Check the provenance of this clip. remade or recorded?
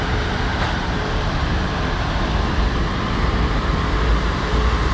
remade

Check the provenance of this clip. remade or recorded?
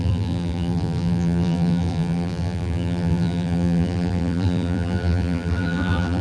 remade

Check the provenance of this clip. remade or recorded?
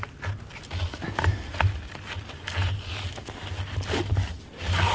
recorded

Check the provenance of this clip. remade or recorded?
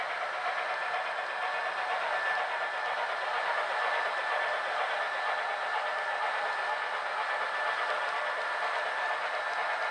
recorded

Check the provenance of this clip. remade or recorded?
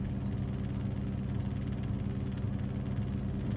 recorded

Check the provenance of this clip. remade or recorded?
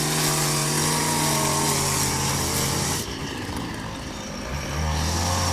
recorded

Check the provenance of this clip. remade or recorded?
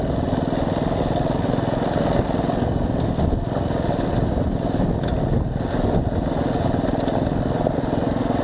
recorded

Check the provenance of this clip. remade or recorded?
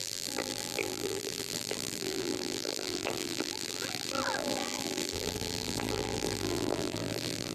remade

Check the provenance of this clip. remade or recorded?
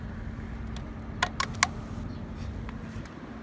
recorded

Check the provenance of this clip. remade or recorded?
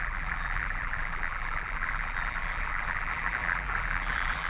remade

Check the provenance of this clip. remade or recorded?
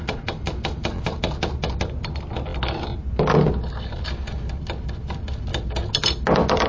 recorded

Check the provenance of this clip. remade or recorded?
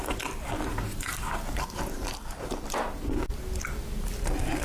recorded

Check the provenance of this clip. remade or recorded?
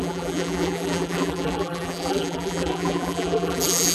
remade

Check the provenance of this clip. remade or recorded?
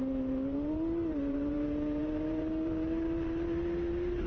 remade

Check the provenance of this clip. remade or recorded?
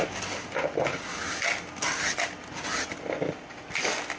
recorded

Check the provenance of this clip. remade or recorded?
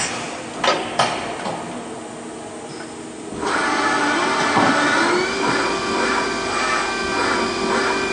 recorded